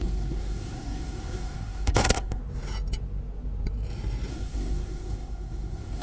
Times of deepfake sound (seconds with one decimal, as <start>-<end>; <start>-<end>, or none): 0.0-2.4; 4.3-6.0